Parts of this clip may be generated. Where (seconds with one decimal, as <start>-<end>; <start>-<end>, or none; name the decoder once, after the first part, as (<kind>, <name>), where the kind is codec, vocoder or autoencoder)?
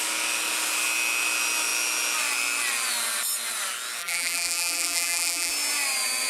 4.0-5.5 (vocoder, BigVGAN v2)